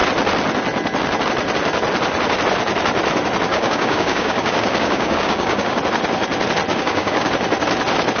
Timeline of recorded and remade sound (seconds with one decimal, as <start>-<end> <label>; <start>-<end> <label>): 0.0-3.5 recorded; 3.5-5.8 remade; 5.8-6.7 recorded; 6.7-7.3 remade; 7.3-8.2 recorded